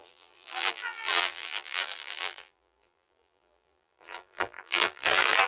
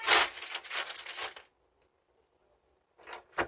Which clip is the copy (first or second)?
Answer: first